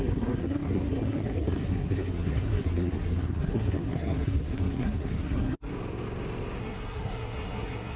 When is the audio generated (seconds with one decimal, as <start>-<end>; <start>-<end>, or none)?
0.0-5.7; 6.6-8.0